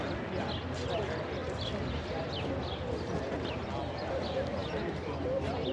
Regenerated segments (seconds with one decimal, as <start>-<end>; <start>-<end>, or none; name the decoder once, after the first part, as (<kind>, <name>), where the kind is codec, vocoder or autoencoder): none